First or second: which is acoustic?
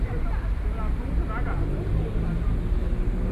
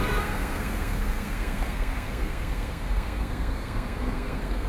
first